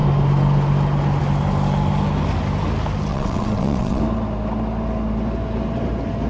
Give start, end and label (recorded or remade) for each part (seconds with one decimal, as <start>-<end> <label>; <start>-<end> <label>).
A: 0.0-3.1 recorded; 3.1-4.0 remade; 4.0-6.3 recorded